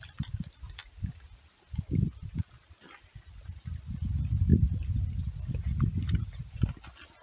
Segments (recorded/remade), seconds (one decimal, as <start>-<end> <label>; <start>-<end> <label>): 0.0-7.2 recorded